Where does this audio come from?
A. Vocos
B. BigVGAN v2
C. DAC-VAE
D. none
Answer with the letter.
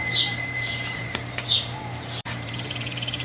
B